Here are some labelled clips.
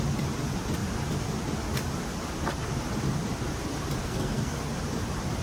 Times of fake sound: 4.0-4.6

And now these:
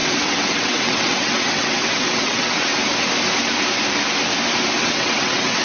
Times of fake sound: 0.0-2.7; 4.8-5.6

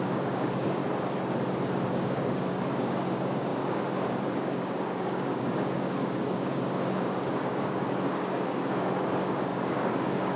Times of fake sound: 0.0-0.8; 1.9-10.4

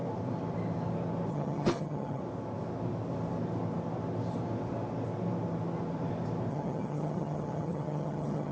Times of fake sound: 1.3-2.2; 6.5-8.5

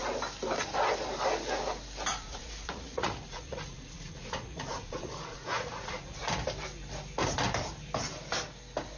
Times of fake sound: 2.1-6.2

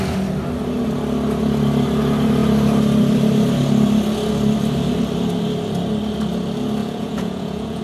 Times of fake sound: 6.8-7.8